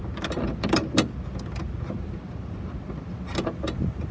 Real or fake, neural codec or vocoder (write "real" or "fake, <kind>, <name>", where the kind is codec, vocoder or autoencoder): real